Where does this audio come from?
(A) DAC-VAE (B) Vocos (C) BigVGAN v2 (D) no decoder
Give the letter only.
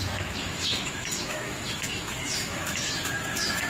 A